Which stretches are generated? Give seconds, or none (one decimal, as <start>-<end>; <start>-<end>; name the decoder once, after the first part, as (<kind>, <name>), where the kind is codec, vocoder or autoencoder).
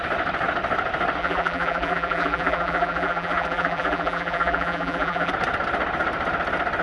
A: 1.2-5.3 (vocoder, BigVGAN v2)